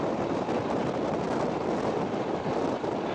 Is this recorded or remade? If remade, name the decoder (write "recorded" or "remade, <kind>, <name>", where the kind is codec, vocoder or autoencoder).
recorded